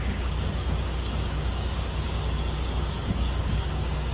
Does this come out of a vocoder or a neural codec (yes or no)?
yes